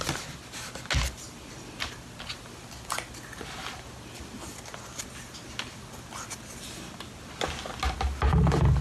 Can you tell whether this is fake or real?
real